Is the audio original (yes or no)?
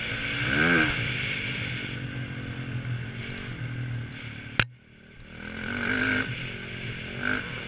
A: yes